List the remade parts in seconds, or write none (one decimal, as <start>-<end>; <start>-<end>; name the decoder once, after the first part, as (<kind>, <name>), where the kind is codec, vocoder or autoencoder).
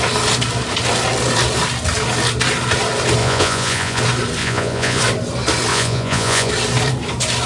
3.2-4.0 (vocoder, Vocos); 4.4-5.0; 5.7-6.5